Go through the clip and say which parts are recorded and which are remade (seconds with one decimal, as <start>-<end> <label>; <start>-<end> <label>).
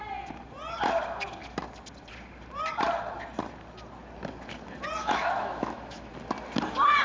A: 0.0-5.0 recorded; 5.0-6.1 remade; 6.1-7.0 recorded